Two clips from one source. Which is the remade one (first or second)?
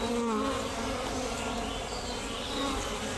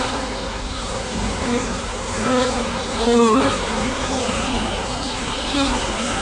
second